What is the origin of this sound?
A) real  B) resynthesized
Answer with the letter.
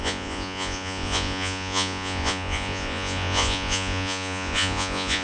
B